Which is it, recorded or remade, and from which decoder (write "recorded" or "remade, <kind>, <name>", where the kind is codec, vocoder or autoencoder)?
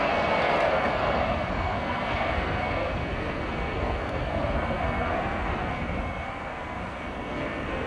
remade, codec, SNAC